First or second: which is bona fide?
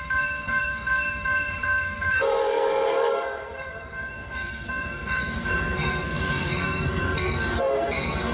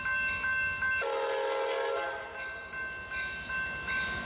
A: second